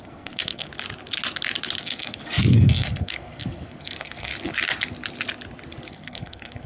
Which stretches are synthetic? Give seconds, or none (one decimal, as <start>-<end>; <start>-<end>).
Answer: 0.0-0.7; 1.8-4.3; 5.9-6.7